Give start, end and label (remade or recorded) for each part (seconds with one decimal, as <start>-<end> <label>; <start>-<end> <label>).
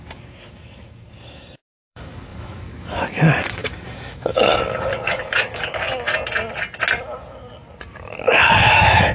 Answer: 0.0-6.1 remade; 6.1-7.9 recorded; 7.9-9.1 remade